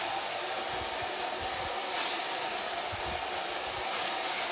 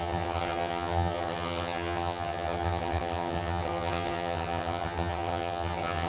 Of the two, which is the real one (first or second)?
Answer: first